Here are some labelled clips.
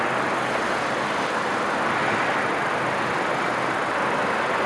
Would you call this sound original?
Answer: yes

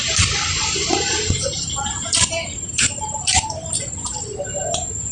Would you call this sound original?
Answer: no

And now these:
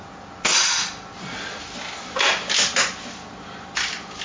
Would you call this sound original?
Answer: yes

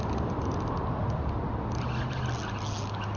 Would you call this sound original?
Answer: yes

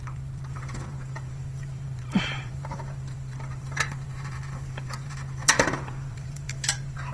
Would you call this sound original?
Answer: no